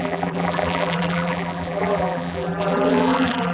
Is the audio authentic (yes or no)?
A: no